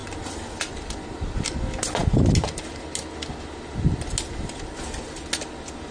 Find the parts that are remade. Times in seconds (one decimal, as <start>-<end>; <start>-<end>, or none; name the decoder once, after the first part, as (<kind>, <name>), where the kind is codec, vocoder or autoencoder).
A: none